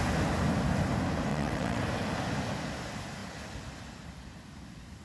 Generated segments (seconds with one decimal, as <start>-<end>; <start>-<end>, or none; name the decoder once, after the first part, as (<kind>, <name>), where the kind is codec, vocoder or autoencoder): 1.3-1.8 (vocoder, WaveNeXt)